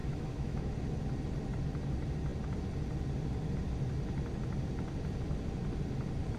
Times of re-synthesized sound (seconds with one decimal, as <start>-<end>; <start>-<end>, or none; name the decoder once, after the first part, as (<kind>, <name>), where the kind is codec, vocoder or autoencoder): 0.0-0.7 (autoencoder, DAC-VAE)